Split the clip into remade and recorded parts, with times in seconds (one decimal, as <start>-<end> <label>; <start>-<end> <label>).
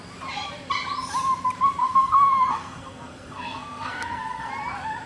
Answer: 0.0-1.8 recorded; 1.8-4.5 remade; 4.5-5.1 recorded